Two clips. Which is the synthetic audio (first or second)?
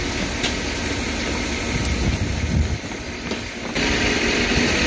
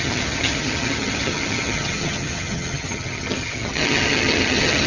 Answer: second